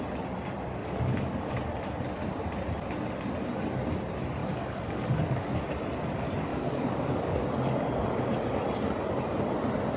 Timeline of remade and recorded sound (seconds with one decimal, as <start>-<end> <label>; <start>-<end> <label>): 0.0-0.8 recorded; 0.8-1.6 remade; 1.6-4.4 recorded; 4.4-5.6 remade; 5.6-6.5 recorded; 6.5-7.4 remade; 7.4-10.0 recorded